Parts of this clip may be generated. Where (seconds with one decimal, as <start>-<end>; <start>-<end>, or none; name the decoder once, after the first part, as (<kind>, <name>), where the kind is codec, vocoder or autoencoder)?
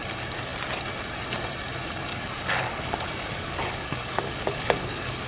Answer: 2.1-5.3 (codec, DAC)